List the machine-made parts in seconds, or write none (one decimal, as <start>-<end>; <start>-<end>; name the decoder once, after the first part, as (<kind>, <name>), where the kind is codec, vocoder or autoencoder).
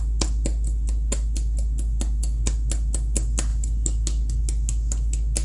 none